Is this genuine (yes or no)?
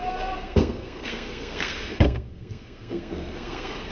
no